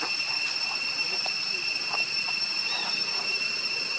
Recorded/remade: remade